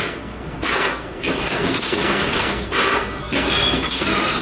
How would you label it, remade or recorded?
remade